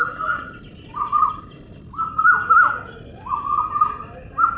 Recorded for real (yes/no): yes